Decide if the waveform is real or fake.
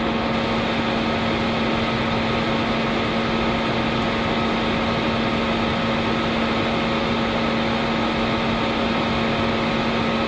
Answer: real